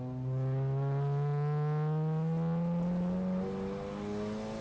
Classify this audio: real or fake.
real